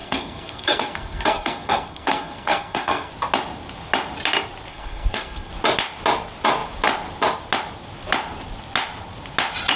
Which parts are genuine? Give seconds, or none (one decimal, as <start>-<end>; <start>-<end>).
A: 3.1-4.7; 5.5-9.8